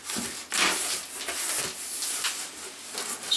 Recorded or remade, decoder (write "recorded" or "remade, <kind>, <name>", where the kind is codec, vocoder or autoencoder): recorded